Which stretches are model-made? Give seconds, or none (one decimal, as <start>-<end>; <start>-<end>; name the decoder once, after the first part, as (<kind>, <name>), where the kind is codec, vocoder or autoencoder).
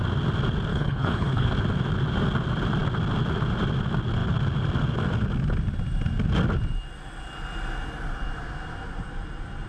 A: 0.7-1.5 (codec, HILCodec)